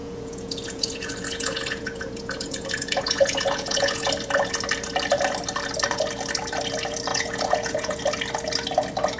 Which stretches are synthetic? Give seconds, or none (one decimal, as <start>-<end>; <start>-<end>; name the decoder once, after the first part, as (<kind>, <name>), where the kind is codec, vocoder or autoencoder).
0.0-4.1 (vocoder, Vocos); 7.1-8.0